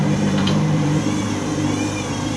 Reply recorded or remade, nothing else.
remade